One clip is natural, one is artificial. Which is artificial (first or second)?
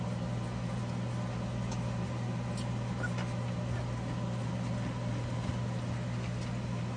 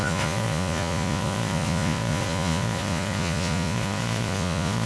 second